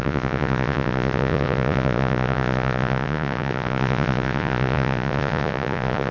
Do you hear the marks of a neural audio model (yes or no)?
yes